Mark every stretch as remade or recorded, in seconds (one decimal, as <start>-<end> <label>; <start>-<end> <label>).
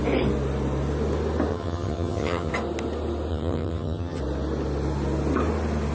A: 0.0-1.5 recorded; 1.5-2.5 remade; 2.5-3.3 recorded; 3.3-4.2 remade; 4.2-5.9 recorded